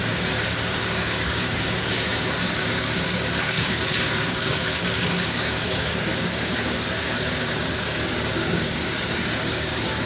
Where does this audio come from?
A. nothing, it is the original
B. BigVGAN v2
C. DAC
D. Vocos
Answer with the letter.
C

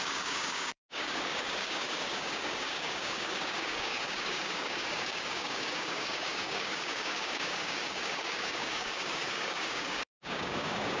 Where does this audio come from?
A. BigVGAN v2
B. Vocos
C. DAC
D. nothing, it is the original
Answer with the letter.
C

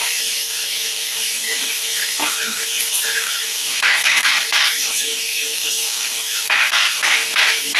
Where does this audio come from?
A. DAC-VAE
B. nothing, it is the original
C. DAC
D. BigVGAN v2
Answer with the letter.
C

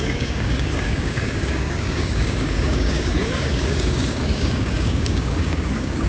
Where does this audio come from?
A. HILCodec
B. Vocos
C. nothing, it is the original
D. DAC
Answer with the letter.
D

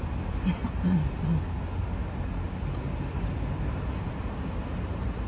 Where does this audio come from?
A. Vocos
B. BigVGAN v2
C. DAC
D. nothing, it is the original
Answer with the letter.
D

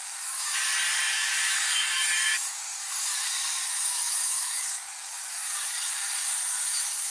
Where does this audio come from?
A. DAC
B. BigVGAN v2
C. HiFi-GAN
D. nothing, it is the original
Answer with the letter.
A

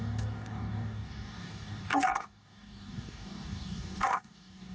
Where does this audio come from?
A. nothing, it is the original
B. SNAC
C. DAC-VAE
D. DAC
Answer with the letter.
D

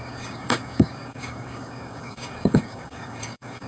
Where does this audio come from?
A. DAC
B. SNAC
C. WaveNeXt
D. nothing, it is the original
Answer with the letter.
A